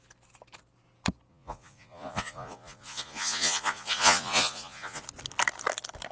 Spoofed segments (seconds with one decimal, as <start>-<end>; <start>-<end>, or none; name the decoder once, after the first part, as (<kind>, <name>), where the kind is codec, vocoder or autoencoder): 1.3-5.0 (vocoder, Vocos)